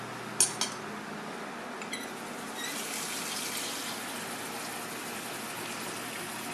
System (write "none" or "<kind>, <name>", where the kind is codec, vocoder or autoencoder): none